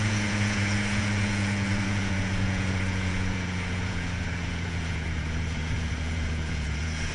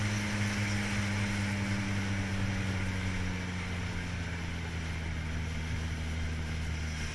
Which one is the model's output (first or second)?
first